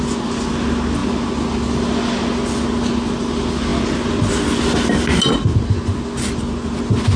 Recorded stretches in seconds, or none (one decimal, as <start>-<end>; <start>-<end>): 0.0-7.2